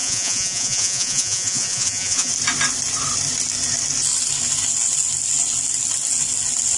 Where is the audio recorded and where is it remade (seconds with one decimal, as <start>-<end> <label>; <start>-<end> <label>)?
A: 0.0-2.3 remade; 2.3-6.8 recorded